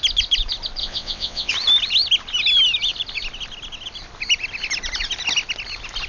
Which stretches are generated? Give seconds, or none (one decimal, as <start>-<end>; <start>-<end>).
0.8-1.5